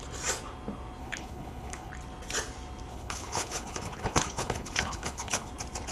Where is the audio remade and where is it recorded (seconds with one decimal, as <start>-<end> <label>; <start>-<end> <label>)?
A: 0.0-1.0 recorded; 1.0-1.9 remade; 1.9-2.9 recorded; 2.9-5.5 remade; 5.5-5.9 recorded